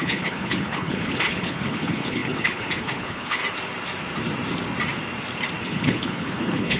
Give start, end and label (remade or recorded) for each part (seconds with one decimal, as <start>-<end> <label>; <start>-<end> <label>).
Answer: 0.0-3.4 remade; 3.4-5.6 recorded; 5.6-6.8 remade